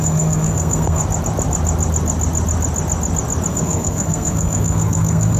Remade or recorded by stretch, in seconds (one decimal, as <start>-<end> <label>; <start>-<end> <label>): 0.0-1.0 remade; 1.0-3.5 recorded; 3.5-5.4 remade